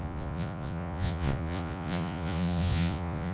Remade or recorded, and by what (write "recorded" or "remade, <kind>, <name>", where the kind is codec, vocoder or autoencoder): remade, vocoder, Vocos